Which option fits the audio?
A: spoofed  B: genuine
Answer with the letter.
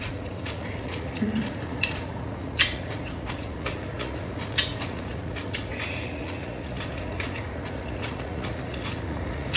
A